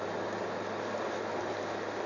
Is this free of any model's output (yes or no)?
yes